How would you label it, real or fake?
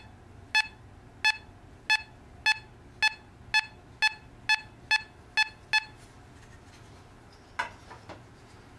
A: real